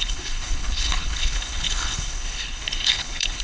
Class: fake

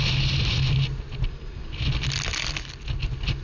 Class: real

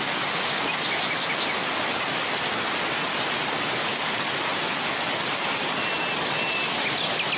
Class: real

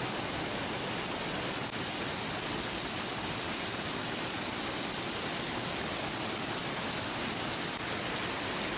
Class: real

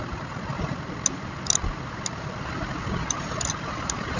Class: real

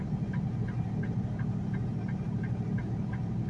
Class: real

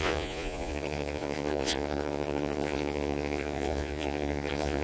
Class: fake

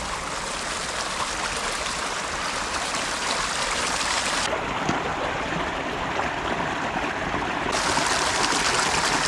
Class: real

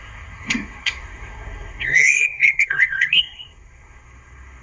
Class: fake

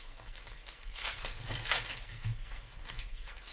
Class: fake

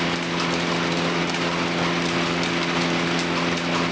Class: real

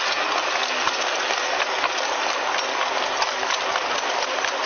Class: real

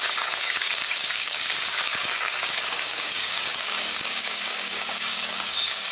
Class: fake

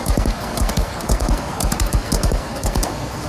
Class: fake